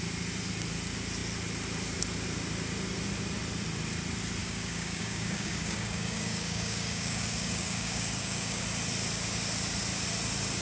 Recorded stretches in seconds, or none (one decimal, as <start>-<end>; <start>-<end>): 0.0-4.4; 8.6-10.6